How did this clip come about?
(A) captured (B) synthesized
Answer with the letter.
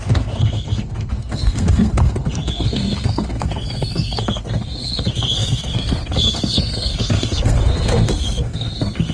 B